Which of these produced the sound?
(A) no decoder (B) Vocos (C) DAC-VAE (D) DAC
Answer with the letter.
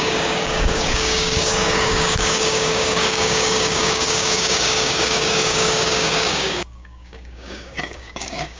D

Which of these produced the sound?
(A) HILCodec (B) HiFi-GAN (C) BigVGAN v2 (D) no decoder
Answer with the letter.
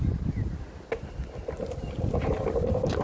D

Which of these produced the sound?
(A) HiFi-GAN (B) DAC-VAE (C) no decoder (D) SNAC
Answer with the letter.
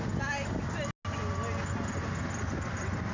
C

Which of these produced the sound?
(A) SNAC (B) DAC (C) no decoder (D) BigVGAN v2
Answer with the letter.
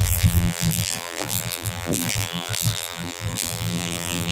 D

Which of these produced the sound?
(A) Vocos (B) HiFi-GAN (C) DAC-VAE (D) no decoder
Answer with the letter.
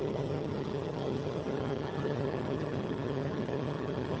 B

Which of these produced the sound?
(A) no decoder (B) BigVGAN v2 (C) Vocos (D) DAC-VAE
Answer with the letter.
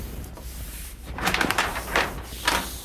B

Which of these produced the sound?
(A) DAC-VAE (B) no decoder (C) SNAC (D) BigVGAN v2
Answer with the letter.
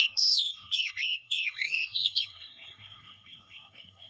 C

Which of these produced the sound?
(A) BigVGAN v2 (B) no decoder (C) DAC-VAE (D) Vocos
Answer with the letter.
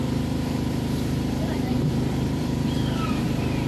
A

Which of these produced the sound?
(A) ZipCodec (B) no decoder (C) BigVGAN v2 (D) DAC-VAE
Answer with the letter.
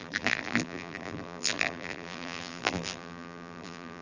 C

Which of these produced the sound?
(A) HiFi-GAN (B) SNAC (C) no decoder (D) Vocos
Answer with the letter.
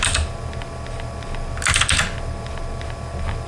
C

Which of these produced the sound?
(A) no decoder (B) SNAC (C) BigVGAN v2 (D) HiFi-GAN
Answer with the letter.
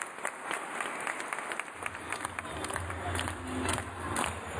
A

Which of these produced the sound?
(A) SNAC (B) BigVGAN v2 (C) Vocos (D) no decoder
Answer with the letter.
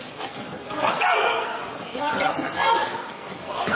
A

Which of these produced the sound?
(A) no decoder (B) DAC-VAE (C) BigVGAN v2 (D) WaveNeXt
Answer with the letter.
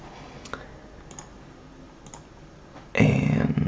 A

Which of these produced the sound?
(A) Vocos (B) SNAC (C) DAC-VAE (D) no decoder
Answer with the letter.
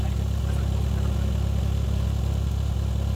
D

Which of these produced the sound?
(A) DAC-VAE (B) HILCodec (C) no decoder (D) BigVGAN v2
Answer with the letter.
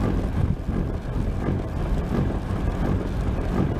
C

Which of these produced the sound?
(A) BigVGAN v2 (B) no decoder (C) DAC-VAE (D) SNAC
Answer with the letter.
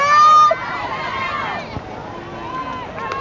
B